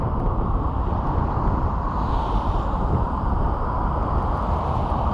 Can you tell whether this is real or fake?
fake